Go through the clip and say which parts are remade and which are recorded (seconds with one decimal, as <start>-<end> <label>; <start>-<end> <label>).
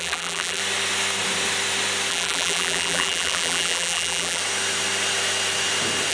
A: 0.0-0.6 remade; 0.6-2.1 recorded; 2.1-4.4 remade; 4.4-6.1 recorded